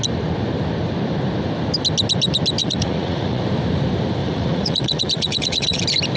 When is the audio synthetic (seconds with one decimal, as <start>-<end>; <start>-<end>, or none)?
2.6-3.4; 4.2-5.8